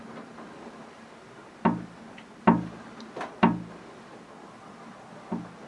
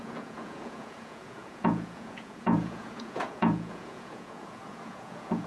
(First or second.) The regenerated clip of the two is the second